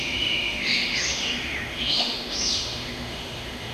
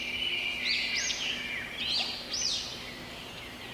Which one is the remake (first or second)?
first